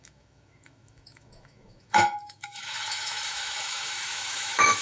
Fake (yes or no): yes